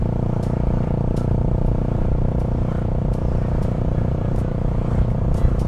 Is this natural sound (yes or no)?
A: no